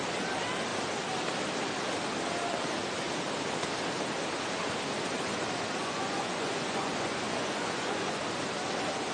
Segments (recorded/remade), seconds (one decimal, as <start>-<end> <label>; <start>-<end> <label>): 0.0-5.8 recorded; 5.8-8.2 remade; 8.2-9.1 recorded